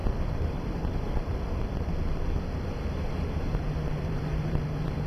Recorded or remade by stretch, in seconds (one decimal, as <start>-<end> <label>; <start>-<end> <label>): 0.0-1.3 remade; 1.3-2.8 recorded; 2.8-5.1 remade